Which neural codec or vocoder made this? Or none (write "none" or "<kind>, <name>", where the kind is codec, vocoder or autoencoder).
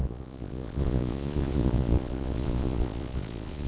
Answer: vocoder, Vocos